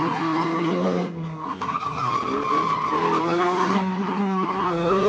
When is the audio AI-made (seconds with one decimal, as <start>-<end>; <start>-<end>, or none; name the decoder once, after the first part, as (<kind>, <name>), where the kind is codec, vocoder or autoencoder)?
0.0-2.1 (codec, SNAC); 3.2-5.1

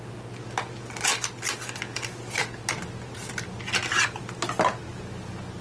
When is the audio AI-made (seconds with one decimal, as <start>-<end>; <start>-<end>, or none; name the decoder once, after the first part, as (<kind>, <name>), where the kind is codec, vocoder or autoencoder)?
none

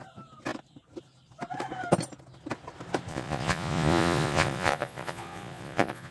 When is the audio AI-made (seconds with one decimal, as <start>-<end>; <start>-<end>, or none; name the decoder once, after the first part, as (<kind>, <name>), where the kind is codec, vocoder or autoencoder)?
3.1-6.1 (vocoder, Vocos)

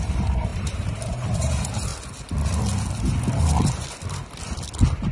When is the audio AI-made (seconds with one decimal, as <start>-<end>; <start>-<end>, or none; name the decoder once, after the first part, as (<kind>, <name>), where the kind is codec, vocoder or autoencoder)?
0.0-1.9 (vocoder, BigVGAN v2)

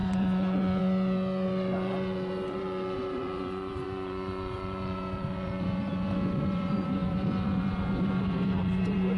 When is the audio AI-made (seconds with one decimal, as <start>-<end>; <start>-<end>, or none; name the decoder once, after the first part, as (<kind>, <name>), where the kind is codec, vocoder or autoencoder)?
0.0-9.2 (vocoder, Vocos)

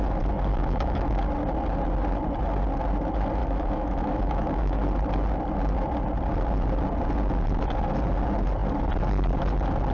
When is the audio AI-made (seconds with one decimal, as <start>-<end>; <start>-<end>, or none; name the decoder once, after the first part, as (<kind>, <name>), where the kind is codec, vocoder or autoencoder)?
0.5-1.2 (autoencoder, DAC-VAE); 3.4-4.8